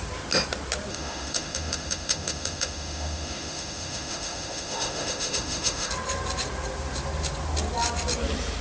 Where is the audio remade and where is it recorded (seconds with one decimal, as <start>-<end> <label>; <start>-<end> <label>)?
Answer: 0.0-0.9 recorded; 0.9-5.9 remade; 5.9-8.6 recorded